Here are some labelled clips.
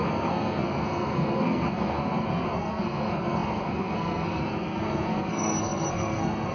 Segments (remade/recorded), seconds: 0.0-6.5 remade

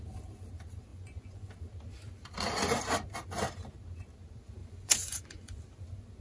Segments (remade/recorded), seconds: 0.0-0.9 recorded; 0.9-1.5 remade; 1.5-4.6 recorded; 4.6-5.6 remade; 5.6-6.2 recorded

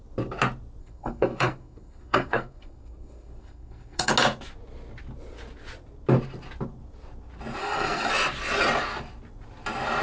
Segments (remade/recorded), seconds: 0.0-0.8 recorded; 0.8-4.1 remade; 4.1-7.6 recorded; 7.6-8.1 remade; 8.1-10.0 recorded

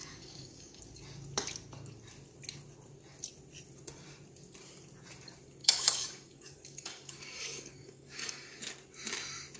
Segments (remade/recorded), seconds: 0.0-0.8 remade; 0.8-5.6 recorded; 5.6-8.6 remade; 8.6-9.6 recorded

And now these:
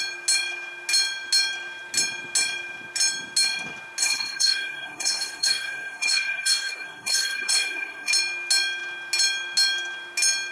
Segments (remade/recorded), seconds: 0.0-4.0 recorded; 4.0-8.1 remade; 8.1-10.5 recorded